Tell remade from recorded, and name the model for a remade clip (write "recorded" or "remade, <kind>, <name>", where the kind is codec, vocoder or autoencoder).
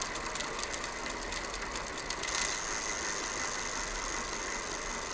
recorded